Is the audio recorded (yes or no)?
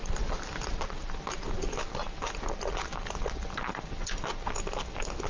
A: yes